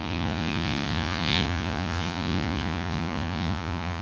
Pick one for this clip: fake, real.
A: fake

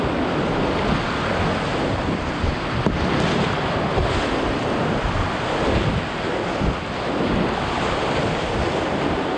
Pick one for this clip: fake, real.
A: real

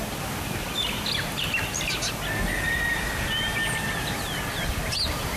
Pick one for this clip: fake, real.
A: real